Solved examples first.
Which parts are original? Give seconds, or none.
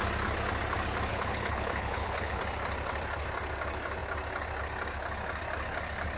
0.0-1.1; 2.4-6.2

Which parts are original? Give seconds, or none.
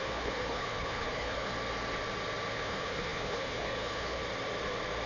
1.5-2.5; 4.2-5.1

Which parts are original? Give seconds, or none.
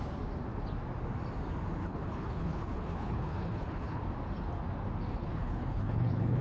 0.0-1.8; 4.0-5.1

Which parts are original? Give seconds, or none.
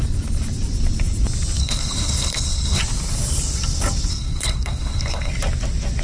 0.0-1.6; 2.8-4.1; 5.3-6.0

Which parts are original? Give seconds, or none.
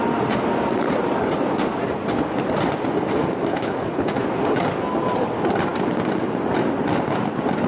0.0-3.5; 4.2-7.7